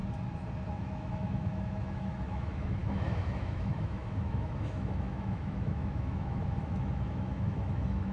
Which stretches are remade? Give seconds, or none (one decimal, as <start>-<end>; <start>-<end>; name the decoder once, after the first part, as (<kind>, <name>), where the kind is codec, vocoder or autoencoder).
0.8-8.1 (autoencoder, DAC-VAE)